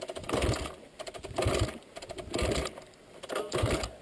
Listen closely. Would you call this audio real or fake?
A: real